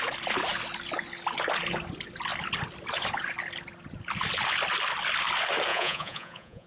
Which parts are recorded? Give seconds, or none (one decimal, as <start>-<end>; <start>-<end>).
0.0-5.7